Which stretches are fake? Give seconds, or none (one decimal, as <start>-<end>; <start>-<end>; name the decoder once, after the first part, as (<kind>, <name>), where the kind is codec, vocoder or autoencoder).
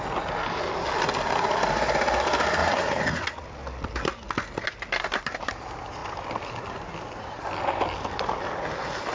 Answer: 2.6-3.3 (vocoder, Vocos)